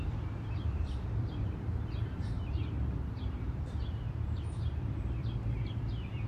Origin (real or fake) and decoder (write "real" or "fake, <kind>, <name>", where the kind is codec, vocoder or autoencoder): fake, vocoder, BigVGAN v2